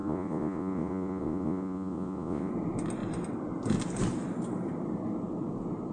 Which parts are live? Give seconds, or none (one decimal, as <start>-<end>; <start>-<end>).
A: 2.5-5.9